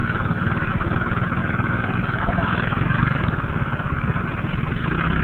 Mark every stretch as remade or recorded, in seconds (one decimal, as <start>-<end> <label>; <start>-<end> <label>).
0.0-0.7 remade; 0.7-1.4 recorded; 1.4-4.2 remade; 4.2-5.2 recorded